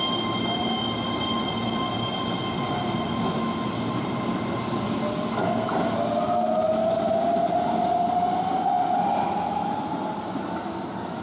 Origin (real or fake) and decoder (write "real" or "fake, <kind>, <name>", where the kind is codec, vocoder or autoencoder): real